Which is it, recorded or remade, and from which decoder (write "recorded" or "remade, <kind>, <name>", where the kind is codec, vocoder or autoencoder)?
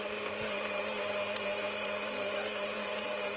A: recorded